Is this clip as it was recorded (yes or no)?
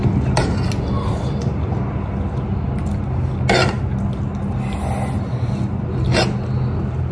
yes